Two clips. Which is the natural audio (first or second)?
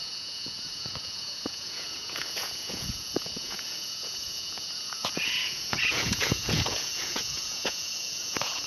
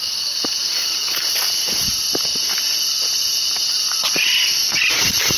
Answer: second